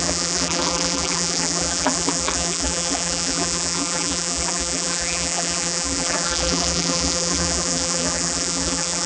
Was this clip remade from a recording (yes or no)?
yes